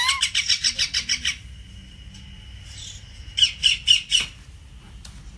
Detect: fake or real real